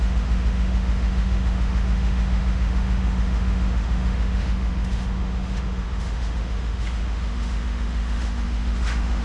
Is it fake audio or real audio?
fake